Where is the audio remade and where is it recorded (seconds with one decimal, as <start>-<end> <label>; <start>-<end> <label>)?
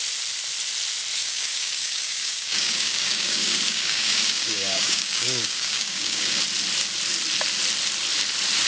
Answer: 0.0-1.2 recorded; 1.2-6.4 remade; 6.4-8.7 recorded